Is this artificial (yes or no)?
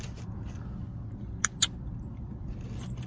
no